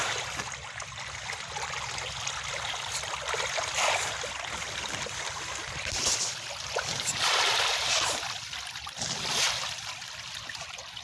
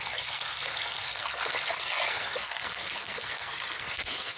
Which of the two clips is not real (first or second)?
second